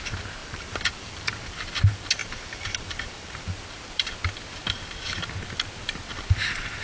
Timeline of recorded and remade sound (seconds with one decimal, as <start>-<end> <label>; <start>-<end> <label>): 0.0-0.4 recorded; 0.4-1.6 remade; 1.6-2.2 recorded; 2.2-4.1 remade; 4.1-6.8 recorded